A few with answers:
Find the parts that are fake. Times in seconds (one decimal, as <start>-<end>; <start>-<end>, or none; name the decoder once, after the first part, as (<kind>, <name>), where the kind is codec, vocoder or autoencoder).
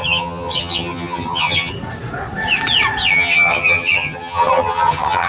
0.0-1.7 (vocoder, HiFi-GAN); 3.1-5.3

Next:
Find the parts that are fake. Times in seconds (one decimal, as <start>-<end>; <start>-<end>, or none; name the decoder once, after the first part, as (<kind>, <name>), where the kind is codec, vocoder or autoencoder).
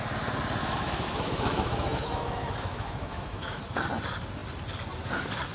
0.6-3.6 (autoencoder, DAC-VAE)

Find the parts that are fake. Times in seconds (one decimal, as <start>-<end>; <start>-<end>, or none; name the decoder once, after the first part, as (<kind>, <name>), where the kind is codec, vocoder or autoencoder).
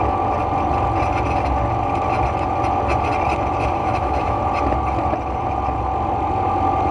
3.8-4.4 (autoencoder, DAC-VAE)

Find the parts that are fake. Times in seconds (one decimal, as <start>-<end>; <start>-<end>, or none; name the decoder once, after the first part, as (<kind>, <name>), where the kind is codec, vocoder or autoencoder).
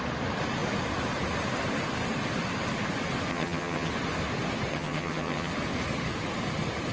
3.3-3.9 (vocoder, HiFi-GAN); 4.7-5.5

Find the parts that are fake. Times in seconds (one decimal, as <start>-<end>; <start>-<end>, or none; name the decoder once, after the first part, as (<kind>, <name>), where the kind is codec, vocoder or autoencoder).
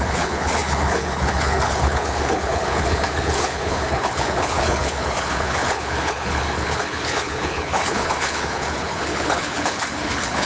0.0-10.5 (codec, HILCodec)